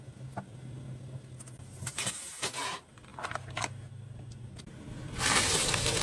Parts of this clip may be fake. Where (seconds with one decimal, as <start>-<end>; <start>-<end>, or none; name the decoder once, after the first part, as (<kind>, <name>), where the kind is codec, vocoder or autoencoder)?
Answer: none